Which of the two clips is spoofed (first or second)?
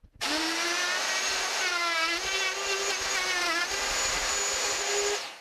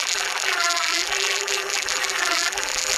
second